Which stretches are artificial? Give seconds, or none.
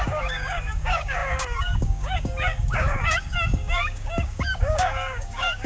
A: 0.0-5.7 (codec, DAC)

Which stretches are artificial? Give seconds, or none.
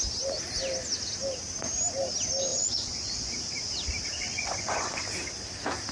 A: 2.5-3.3 (vocoder, Vocos); 4.3-4.9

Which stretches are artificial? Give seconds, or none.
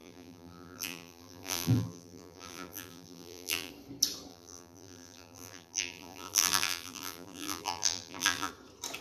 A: 0.0-3.7 (vocoder, BigVGAN v2); 4.3-8.5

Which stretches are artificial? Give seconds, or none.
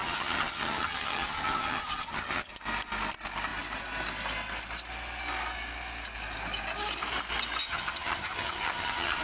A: 0.0-2.5 (vocoder, HiFi-GAN); 7.6-9.2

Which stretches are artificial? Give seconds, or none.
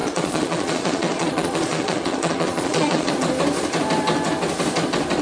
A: 0.0-3.1 (vocoder, Vocos)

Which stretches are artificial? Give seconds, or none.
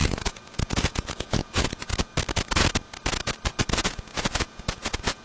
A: 0.0-1.9 (vocoder, Vocos); 3.7-5.2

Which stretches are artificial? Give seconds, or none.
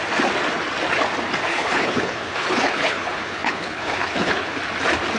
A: 1.5-4.6 (codec, HILCodec)